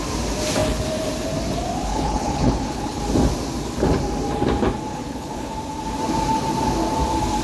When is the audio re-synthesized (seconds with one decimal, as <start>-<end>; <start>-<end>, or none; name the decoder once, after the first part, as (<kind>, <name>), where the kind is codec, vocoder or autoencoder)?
1.9-3.0 (codec, HILCodec); 4.9-5.5